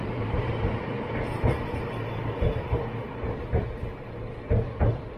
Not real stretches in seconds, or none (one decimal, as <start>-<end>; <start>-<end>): 0.0-1.2